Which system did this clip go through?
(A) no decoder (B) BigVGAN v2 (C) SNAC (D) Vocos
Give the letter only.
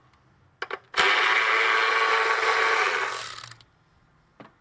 A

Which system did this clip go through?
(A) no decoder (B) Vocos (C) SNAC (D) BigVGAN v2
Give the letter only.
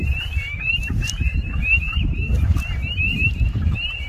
D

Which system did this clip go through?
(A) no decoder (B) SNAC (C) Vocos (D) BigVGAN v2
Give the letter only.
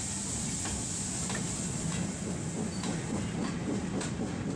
A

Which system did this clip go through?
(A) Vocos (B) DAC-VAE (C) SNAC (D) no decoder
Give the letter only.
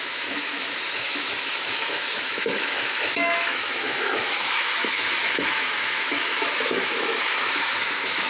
B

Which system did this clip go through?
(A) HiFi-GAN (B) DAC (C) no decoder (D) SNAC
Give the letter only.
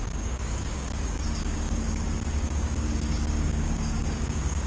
B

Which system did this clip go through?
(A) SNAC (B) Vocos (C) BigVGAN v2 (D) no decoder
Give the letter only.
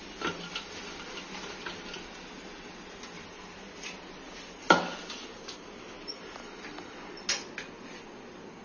D